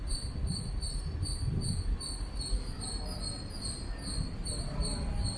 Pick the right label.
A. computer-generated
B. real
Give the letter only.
B